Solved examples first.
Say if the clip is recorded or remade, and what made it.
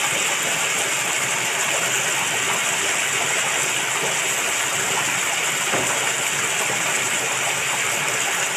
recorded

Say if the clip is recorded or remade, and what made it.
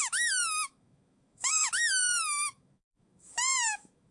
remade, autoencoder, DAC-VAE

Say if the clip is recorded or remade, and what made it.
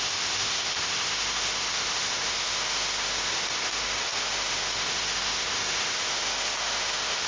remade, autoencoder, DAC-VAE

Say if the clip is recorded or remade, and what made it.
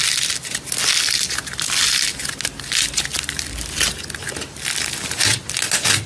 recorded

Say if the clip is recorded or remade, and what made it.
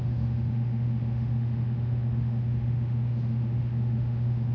remade, autoencoder, DAC-VAE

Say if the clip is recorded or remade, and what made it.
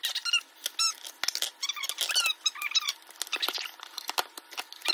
recorded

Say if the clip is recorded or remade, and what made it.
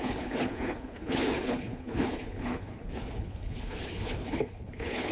remade, codec, HILCodec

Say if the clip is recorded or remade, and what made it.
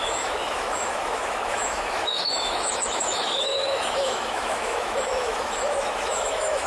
remade, autoencoder, DAC-VAE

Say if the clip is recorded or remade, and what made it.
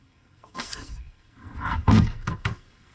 remade, codec, SNAC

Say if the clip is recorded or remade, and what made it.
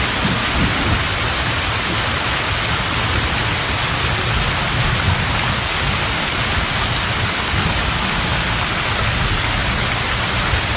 recorded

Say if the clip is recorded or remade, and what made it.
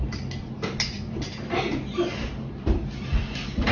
recorded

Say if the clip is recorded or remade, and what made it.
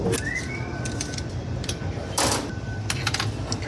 recorded